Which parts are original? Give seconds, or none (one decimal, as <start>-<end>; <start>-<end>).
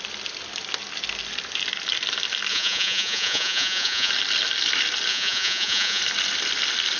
0.0-2.5; 4.1-5.1; 6.0-7.0